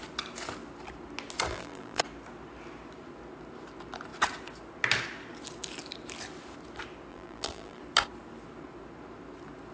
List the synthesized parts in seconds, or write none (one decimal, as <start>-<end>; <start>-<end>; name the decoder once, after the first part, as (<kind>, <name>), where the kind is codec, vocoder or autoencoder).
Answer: 1.5-2.0 (vocoder, BigVGAN v2); 7.1-7.8